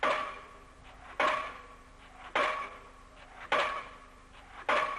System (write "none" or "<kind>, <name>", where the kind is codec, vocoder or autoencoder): vocoder, BigVGAN v2